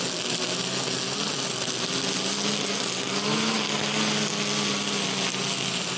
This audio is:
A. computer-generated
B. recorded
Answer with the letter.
B